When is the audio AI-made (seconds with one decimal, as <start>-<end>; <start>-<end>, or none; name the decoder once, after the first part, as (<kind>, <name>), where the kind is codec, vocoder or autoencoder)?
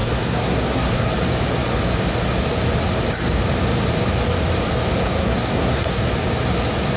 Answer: 0.0-1.1 (codec, SNAC); 5.2-6.1